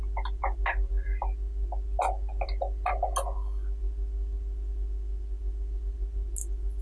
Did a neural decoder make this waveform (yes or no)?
no